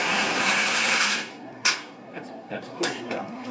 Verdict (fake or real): fake